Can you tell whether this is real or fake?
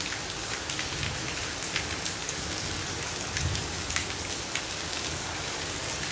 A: fake